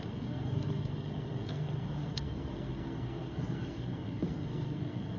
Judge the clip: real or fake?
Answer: fake